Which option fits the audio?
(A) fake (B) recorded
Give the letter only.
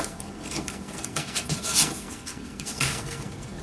A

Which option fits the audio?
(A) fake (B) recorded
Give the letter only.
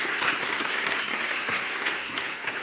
A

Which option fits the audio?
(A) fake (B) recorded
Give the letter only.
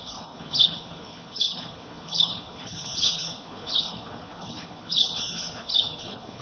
A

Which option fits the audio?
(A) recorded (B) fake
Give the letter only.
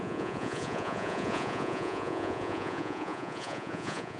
B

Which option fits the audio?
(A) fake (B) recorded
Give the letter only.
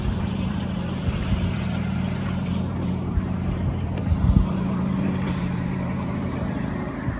A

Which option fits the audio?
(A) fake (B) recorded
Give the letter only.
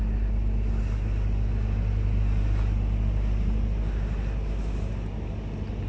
B